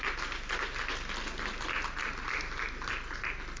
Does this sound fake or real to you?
real